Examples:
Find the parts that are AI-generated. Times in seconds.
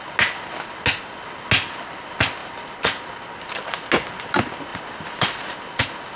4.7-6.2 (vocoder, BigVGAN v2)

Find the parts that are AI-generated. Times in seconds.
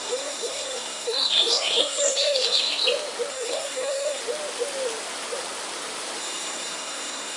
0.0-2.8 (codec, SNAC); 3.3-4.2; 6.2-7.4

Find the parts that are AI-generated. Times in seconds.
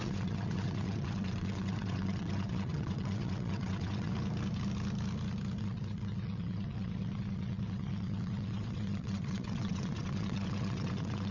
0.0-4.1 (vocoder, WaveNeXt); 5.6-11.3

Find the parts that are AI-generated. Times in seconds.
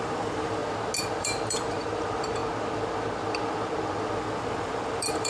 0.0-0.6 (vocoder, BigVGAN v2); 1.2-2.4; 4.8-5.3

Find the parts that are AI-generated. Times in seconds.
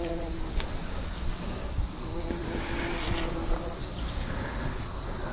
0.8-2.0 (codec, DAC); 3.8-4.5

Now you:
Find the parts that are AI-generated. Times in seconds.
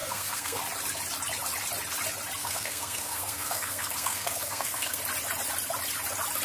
0.0-0.6 (codec, SNAC); 2.4-5.0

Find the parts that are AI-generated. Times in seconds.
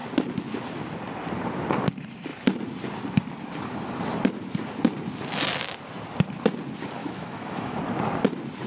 7.0-7.8 (autoencoder, DAC-VAE)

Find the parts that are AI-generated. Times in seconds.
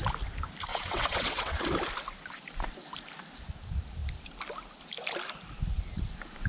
0.7-1.6 (vocoder, WaveNeXt)